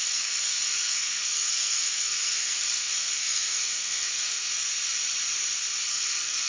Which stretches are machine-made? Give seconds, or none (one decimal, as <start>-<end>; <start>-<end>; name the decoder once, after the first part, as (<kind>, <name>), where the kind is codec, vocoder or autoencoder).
0.0-4.5 (codec, SNAC); 5.9-6.5